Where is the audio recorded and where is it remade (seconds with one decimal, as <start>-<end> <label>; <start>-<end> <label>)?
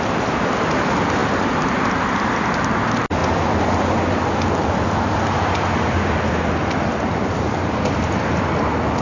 0.0-9.0 recorded